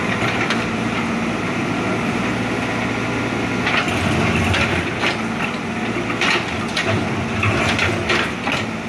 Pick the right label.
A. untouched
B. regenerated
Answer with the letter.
A